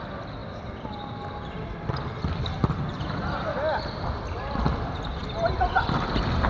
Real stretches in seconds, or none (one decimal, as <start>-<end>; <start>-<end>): 0.0-6.5